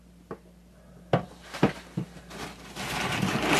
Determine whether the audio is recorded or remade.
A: recorded